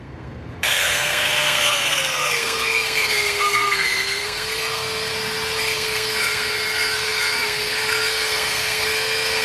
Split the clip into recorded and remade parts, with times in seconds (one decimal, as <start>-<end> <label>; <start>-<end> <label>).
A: 0.0-5.1 remade; 5.1-5.6 recorded; 5.6-9.4 remade